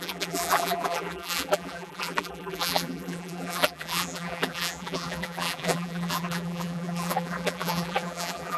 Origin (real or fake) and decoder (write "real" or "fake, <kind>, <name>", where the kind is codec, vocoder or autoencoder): fake, vocoder, BigVGAN v2